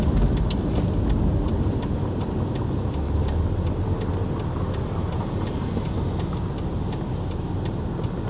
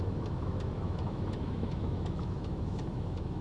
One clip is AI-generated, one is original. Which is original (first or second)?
first